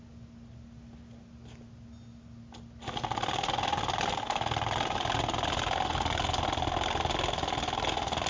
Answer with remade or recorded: recorded